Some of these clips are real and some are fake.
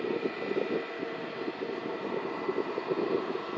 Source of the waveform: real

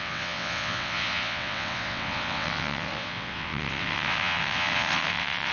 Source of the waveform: fake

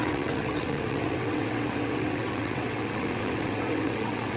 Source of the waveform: fake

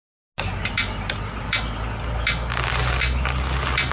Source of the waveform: real